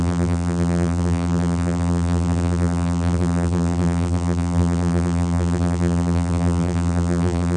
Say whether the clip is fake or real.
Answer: fake